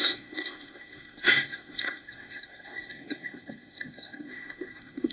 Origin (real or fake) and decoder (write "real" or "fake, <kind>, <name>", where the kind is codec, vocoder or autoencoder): fake, codec, SNAC